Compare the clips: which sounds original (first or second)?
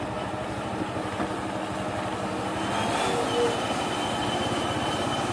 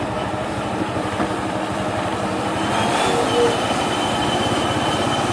first